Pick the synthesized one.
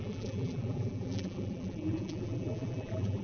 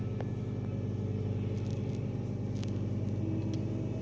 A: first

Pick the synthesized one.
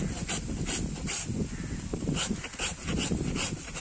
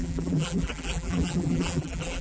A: second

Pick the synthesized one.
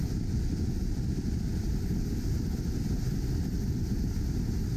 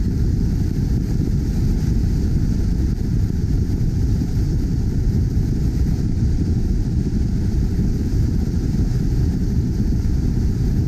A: second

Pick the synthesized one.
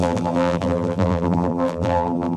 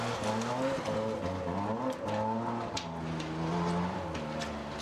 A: first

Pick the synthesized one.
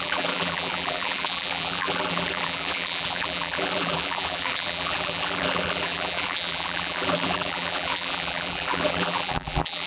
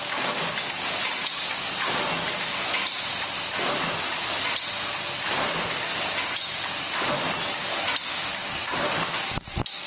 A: first